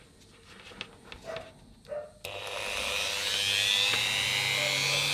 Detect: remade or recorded recorded